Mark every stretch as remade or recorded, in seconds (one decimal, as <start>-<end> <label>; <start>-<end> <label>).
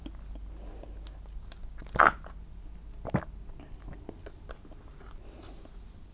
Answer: 0.0-6.1 recorded